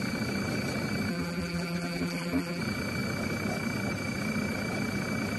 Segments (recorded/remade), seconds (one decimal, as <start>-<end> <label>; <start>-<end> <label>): 0.0-1.1 recorded; 1.1-2.6 remade; 2.6-5.4 recorded